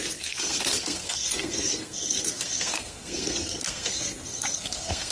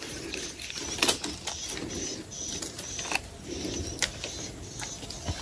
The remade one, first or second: first